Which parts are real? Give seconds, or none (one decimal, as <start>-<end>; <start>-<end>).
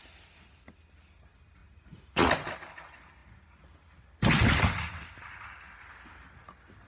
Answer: 0.0-1.6; 2.3-6.9